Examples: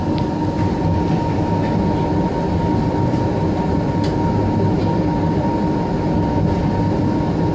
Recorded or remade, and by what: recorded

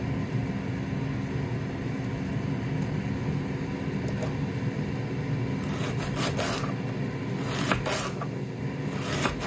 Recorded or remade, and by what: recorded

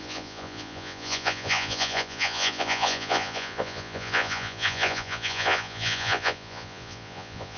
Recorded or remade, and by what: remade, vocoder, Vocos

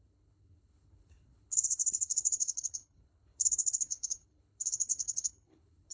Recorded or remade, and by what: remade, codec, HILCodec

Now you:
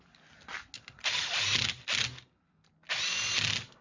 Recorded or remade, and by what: recorded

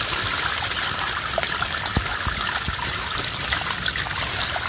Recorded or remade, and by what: recorded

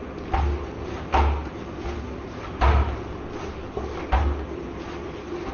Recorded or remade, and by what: recorded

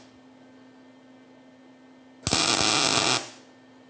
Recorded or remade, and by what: recorded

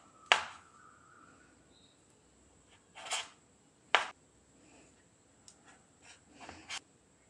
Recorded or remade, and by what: recorded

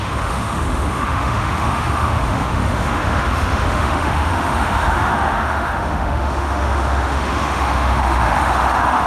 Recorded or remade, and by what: remade, autoencoder, DAC-VAE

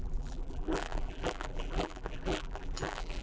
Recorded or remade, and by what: remade, vocoder, BigVGAN v2